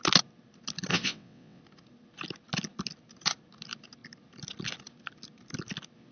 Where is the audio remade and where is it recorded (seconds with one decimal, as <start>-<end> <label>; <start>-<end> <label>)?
0.0-0.9 recorded; 0.9-1.6 remade; 1.6-6.1 recorded